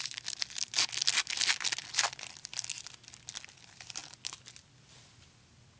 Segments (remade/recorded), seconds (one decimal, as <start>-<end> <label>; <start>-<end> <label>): 0.0-5.8 recorded

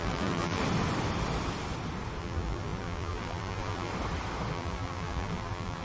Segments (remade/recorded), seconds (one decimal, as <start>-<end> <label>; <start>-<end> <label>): 0.0-0.6 remade; 0.6-2.2 recorded; 2.2-3.9 remade; 3.9-4.5 recorded; 4.5-5.8 remade

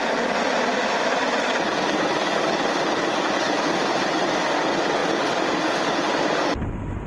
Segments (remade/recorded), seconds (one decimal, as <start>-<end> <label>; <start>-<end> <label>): 0.0-7.1 recorded

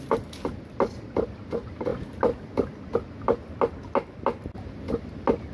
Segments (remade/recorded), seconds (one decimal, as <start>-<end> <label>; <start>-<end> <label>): 0.0-5.5 recorded

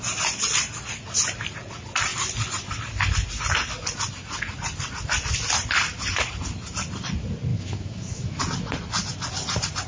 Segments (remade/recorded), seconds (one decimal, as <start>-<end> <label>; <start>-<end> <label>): 0.0-7.5 recorded; 7.5-8.4 remade; 8.4-9.9 recorded

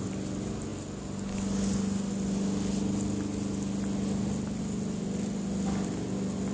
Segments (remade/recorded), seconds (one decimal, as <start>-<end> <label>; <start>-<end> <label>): 0.0-6.5 recorded